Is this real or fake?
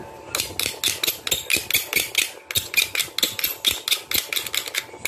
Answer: real